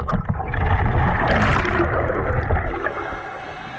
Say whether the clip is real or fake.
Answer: real